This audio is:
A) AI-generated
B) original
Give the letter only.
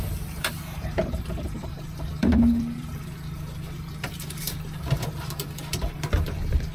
A